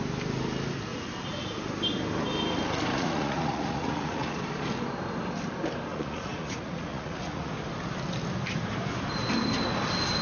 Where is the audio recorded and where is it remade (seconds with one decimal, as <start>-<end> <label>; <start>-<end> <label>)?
0.0-2.9 recorded; 2.9-4.4 remade; 4.4-5.9 recorded; 5.9-7.5 remade; 7.5-10.2 recorded